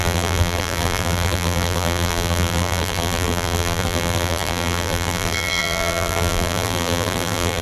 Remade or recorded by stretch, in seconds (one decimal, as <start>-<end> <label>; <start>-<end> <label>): 0.0-7.6 remade